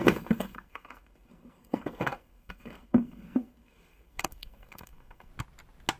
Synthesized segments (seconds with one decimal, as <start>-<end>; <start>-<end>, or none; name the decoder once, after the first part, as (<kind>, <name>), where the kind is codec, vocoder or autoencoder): 0.0-5.3 (codec, SNAC)